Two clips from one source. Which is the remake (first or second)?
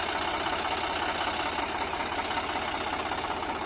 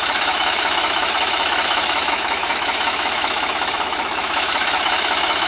second